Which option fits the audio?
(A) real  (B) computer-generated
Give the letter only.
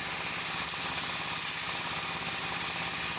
A